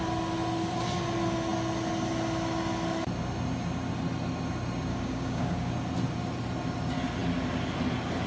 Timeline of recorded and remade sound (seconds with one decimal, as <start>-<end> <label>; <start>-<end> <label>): 0.0-4.9 recorded; 4.9-5.7 remade; 5.7-8.3 recorded